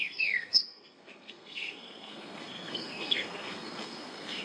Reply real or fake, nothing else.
fake